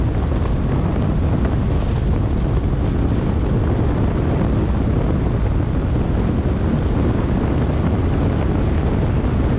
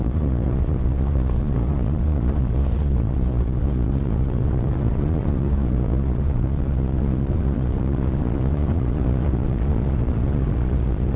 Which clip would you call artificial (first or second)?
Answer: second